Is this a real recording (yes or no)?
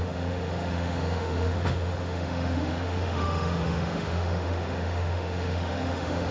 no